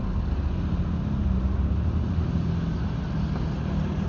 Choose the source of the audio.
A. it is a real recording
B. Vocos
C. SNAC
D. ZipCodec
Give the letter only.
A